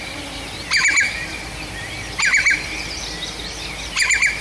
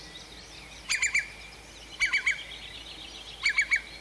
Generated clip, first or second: first